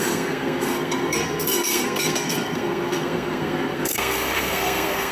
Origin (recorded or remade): remade